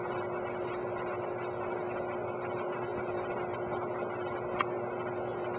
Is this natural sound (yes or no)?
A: yes